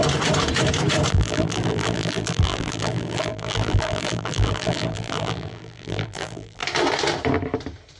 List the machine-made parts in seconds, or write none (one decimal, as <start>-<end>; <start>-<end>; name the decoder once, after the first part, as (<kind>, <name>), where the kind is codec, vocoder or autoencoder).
1.1-6.6 (vocoder, BigVGAN v2)

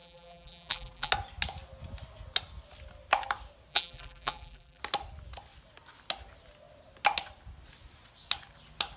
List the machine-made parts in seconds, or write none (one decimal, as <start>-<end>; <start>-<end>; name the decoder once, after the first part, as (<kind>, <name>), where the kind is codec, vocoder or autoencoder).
0.0-1.1 (vocoder, BigVGAN v2); 3.7-4.8

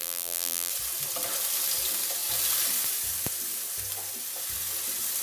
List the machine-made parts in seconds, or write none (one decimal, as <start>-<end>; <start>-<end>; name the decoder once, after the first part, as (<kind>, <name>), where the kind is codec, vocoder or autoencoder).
0.0-0.7 (vocoder, BigVGAN v2)

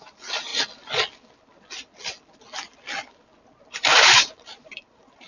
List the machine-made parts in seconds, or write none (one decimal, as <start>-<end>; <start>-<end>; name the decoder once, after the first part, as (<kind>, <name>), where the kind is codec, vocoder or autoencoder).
0.0-0.5 (vocoder, BigVGAN v2); 3.7-5.3

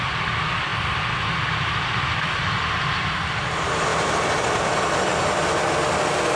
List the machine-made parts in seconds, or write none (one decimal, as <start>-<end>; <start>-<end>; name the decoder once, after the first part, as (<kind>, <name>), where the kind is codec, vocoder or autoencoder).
none

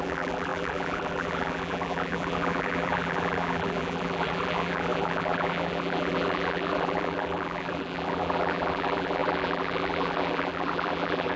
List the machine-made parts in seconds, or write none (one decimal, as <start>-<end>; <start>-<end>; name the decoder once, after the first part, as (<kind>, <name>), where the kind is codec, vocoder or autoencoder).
0.0-11.4 (vocoder, BigVGAN v2)